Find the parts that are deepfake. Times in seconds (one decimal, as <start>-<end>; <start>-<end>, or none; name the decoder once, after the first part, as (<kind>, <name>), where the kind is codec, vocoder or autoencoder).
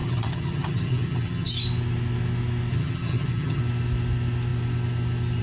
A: 0.0-1.5 (vocoder, HiFi-GAN); 2.7-3.6